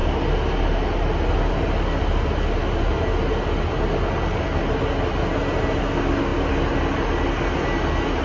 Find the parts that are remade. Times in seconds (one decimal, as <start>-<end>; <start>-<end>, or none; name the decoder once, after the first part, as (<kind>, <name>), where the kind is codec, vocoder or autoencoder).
none

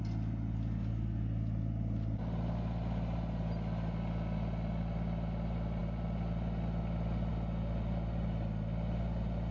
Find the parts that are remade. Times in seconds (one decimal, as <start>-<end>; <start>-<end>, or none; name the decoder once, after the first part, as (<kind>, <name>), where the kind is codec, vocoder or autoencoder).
none